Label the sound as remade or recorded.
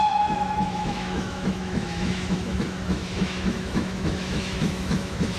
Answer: remade